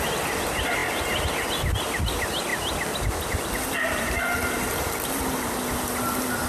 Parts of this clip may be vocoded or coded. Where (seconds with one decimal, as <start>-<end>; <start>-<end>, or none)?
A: none